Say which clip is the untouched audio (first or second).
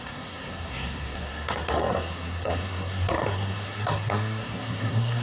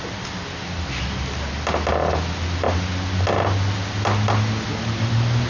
second